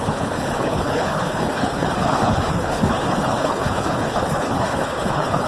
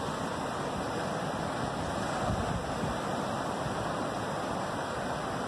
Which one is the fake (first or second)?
first